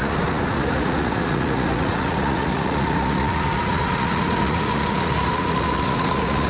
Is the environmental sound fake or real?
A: fake